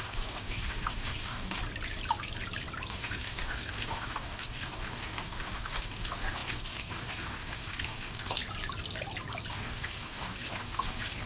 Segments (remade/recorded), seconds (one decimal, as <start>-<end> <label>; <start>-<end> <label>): 0.0-1.6 remade; 1.6-2.9 recorded; 2.9-8.4 remade; 8.4-9.5 recorded; 9.5-11.3 remade